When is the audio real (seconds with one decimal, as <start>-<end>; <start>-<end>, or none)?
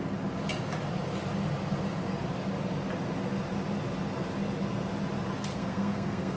0.0-5.5